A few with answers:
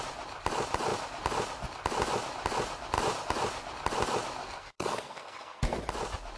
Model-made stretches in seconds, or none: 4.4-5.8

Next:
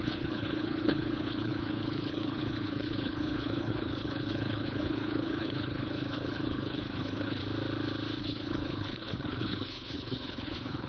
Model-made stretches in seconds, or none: 0.0-7.4; 8.2-10.9

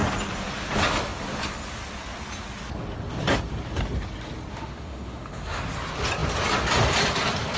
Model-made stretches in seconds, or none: 4.5-5.6

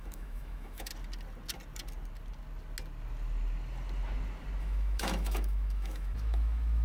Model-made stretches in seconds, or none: 0.0-0.9; 4.6-6.8

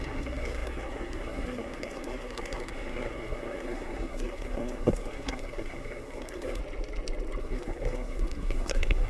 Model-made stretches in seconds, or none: 0.0-6.6; 7.4-9.1

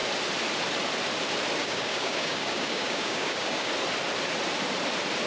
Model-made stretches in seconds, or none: 1.6-3.7

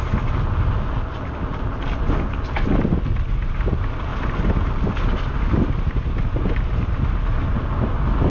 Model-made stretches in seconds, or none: none

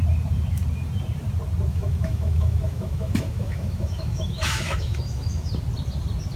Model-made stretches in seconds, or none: 1.7-5.5